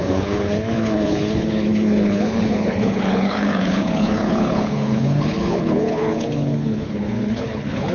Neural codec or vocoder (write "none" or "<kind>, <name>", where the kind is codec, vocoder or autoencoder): codec, HILCodec